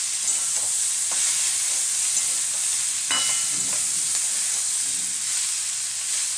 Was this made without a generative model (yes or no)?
yes